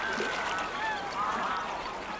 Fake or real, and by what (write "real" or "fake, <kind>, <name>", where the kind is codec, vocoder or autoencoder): real